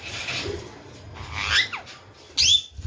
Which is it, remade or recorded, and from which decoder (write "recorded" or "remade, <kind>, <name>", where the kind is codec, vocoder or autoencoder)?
recorded